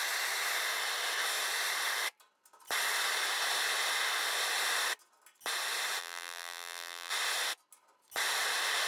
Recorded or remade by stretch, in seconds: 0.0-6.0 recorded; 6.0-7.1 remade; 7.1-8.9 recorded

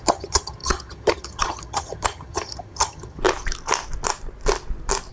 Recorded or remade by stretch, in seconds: 0.0-3.2 remade; 3.2-5.1 recorded

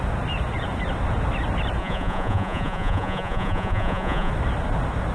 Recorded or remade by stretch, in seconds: 0.0-1.8 recorded; 1.8-4.3 remade; 4.3-5.1 recorded